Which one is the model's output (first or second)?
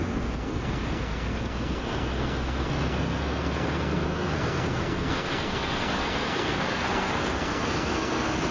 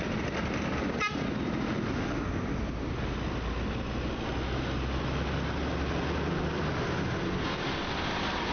first